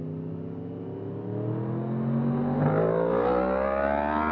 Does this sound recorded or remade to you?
recorded